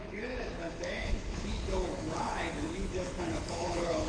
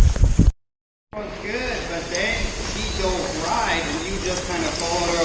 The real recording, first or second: second